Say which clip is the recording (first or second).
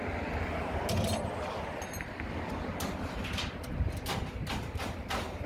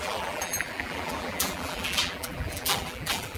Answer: first